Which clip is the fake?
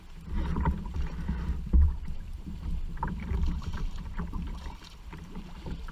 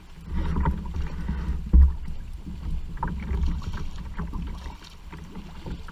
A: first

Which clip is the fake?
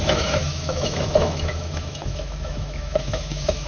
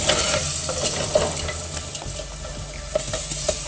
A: first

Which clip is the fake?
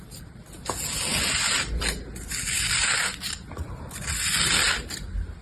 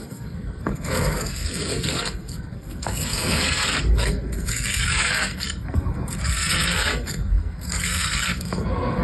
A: second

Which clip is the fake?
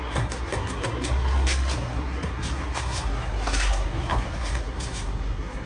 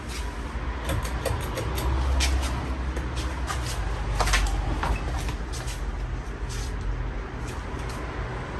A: first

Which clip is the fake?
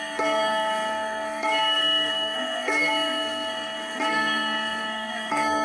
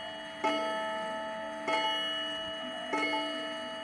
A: first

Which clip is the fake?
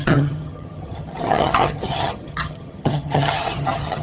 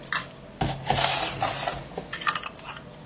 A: first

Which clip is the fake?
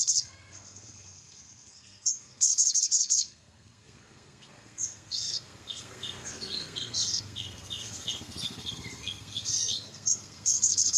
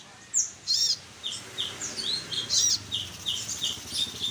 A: first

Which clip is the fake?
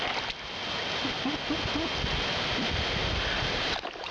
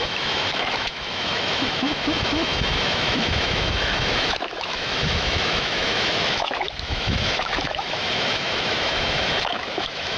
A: second